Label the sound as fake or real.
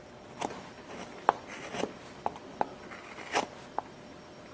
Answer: real